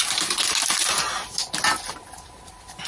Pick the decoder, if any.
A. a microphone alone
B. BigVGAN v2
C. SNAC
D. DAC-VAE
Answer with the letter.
A